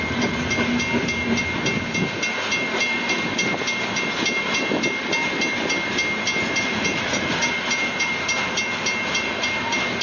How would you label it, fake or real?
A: real